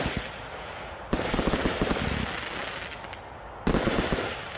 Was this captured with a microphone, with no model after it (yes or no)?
yes